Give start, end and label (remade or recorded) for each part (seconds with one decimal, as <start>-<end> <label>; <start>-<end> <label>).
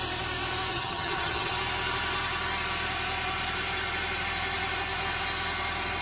0.0-0.7 recorded; 0.7-1.5 remade; 1.5-6.0 recorded